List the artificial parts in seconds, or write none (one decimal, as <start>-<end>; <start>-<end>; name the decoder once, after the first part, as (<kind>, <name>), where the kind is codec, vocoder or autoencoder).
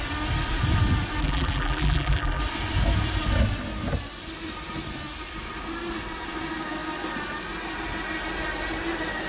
1.2-2.4 (vocoder, BigVGAN v2)